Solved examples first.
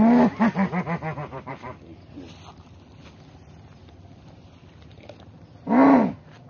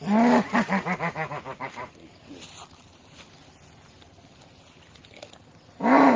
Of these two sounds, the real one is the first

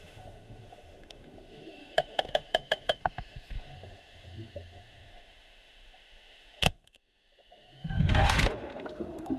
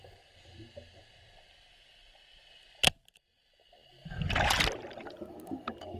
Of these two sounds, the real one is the second